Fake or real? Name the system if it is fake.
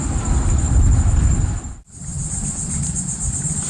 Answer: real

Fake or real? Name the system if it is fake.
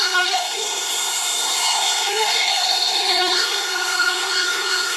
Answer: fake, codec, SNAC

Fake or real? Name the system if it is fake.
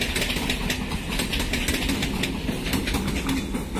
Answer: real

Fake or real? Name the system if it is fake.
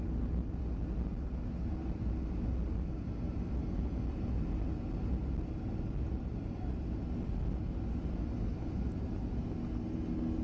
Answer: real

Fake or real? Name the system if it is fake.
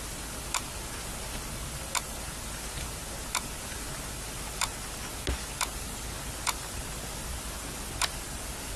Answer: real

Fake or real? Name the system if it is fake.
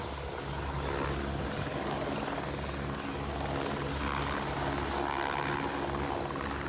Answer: real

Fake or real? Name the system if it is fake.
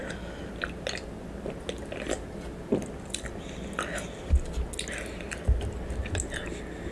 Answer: real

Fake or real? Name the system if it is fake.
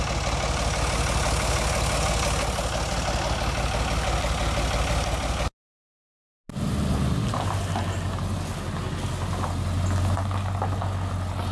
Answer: real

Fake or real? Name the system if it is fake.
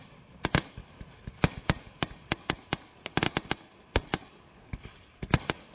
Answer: real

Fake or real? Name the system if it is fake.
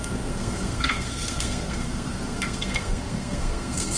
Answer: fake, codec, SNAC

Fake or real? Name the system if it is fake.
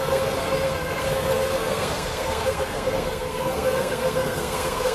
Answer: fake, codec, SNAC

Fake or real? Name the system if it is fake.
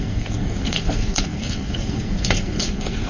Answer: fake, codec, SNAC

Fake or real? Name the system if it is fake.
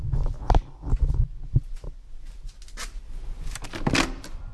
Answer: real